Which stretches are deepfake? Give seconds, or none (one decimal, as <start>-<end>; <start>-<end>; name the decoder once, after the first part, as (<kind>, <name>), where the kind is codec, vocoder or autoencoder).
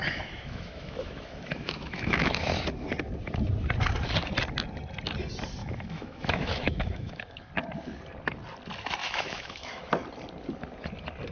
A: 0.0-2.7 (autoencoder, DAC-VAE); 5.6-7.5; 9.0-9.9